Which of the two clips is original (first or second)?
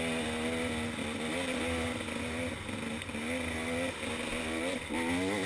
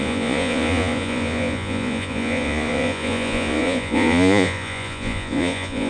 first